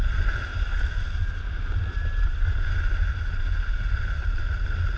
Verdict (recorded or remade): recorded